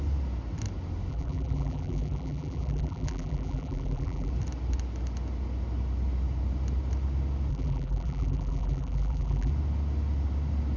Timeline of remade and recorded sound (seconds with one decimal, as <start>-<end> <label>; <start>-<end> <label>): 0.0-1.1 recorded; 1.1-4.3 remade; 4.3-7.5 recorded; 7.5-9.5 remade; 9.5-10.8 recorded